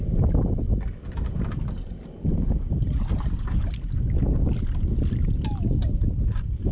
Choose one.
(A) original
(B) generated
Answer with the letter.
A